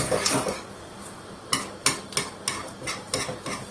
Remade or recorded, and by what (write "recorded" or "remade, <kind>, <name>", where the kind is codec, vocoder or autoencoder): recorded